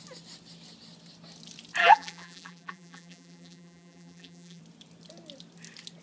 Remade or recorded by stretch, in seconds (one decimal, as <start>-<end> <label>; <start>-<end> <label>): 0.0-1.8 recorded; 1.8-4.6 remade; 4.6-6.0 recorded